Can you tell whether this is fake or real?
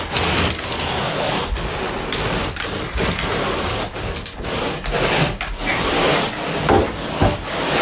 real